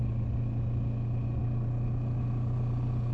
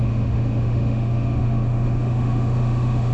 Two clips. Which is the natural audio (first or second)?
first